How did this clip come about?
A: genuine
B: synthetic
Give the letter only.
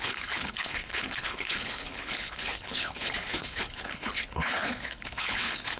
B